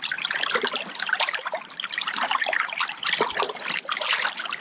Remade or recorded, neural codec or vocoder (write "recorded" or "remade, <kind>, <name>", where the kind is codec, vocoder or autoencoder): recorded